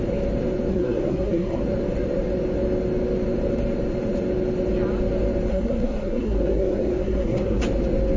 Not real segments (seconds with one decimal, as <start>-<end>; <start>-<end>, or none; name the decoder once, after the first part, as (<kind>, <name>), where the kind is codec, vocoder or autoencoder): 0.7-1.6 (codec, SNAC); 5.5-7.6